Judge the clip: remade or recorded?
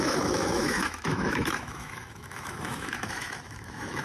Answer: remade